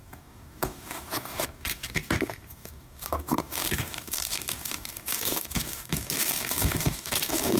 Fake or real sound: fake